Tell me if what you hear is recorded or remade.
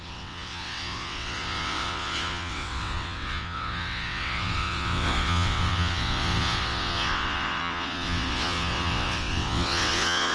remade